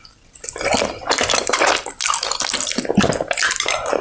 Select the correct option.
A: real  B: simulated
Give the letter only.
A